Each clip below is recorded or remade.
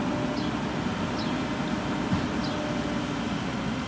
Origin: recorded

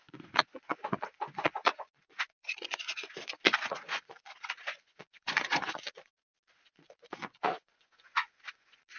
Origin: remade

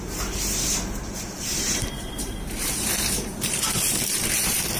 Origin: remade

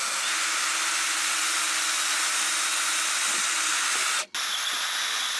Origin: recorded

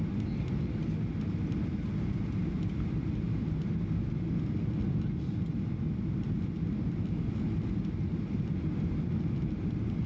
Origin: recorded